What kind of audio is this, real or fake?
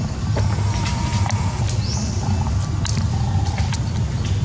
real